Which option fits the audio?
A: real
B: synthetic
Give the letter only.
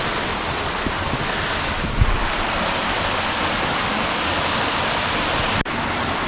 A